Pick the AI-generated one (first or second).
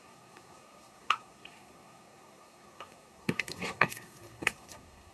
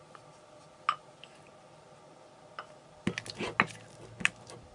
first